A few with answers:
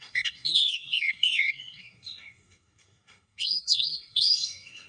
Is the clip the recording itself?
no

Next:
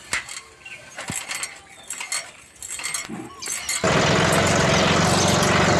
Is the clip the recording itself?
yes